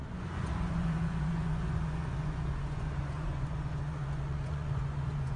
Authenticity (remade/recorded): remade